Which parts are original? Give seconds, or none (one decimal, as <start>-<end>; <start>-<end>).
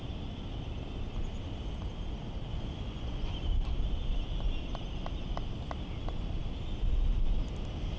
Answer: 0.0-2.5; 3.5-8.0